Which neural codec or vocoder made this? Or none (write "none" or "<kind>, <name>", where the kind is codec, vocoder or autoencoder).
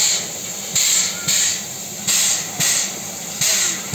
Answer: none